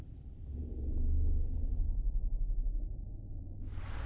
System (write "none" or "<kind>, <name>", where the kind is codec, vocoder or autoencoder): none